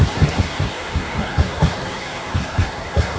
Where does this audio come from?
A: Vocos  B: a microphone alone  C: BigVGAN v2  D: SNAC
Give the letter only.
D